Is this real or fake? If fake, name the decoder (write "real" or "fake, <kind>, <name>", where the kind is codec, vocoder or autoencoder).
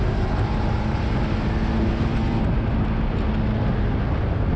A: real